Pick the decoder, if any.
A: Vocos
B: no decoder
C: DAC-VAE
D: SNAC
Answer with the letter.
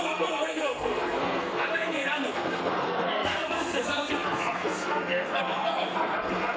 D